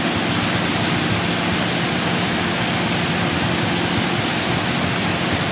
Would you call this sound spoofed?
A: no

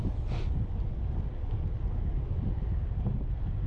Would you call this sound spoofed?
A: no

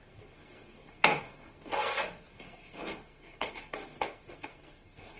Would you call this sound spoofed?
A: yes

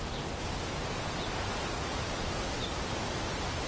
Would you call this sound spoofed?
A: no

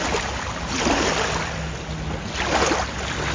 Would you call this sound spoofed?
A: no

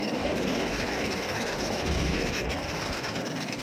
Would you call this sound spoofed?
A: yes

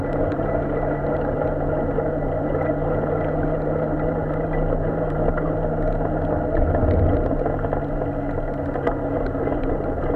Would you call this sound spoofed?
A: no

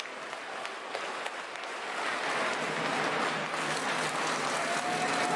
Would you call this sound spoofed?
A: no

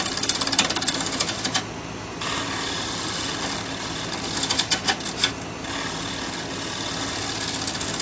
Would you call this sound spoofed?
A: no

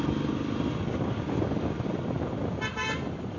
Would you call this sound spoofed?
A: no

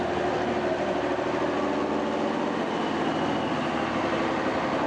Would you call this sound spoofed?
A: no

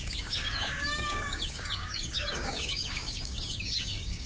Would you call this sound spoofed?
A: yes